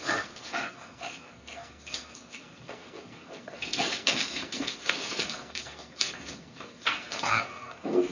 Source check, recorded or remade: remade